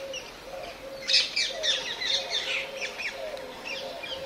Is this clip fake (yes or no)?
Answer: no